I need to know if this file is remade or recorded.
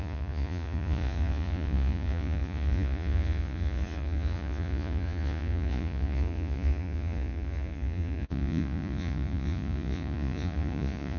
remade